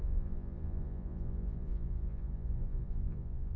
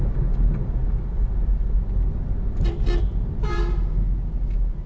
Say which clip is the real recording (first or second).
second